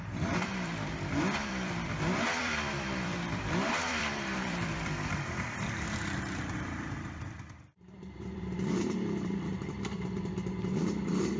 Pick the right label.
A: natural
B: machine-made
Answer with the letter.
B